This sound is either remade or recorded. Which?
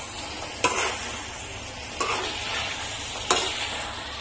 recorded